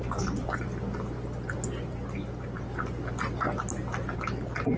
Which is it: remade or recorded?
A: recorded